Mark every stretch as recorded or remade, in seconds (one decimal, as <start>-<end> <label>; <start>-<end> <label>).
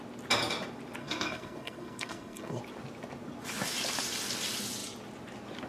0.0-1.0 recorded; 1.0-2.6 remade; 2.6-5.7 recorded